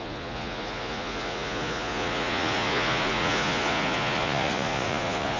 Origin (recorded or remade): remade